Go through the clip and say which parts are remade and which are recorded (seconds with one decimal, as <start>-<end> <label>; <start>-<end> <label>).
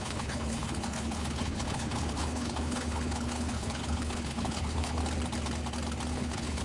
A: 0.0-5.0 remade; 5.0-6.1 recorded; 6.1-6.6 remade